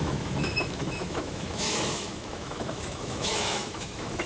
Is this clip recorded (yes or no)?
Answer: no